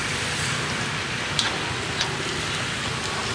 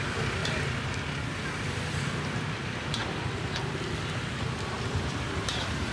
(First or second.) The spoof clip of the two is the second